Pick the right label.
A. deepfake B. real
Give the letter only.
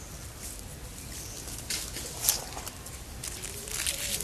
B